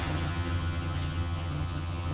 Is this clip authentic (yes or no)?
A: no